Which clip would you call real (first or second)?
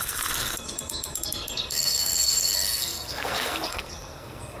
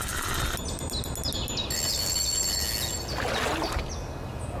second